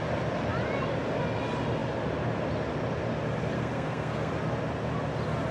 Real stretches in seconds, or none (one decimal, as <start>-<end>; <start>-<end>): 0.0-3.5; 4.3-5.5